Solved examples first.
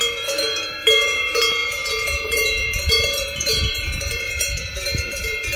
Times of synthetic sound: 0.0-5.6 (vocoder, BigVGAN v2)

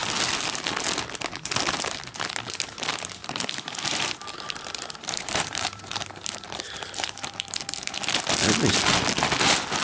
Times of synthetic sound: 3.2-7.6 (vocoder, BigVGAN v2)